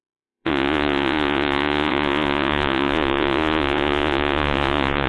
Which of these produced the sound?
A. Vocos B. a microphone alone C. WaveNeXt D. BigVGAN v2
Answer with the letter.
A